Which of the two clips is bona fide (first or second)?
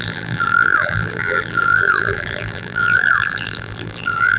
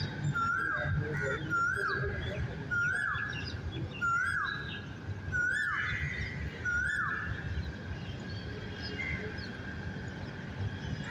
second